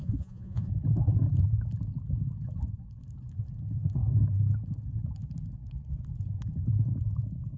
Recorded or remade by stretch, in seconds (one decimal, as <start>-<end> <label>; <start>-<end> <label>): 0.0-0.7 remade; 0.7-7.6 recorded